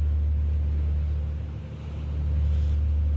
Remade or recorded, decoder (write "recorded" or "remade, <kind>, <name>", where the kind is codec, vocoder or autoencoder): recorded